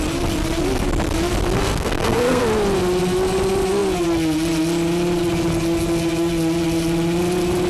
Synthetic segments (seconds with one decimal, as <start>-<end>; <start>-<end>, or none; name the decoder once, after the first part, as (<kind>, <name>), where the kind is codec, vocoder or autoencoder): 1.6-2.4 (codec, SNAC)